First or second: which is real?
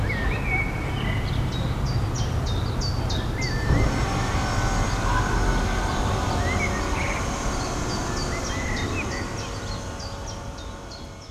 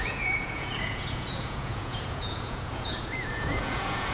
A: first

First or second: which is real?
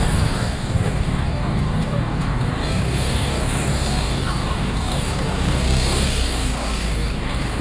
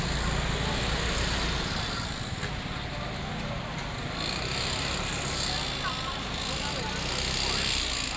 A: second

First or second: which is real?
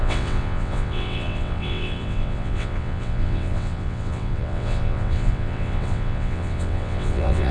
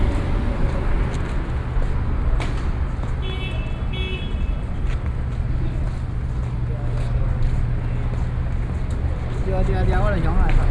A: second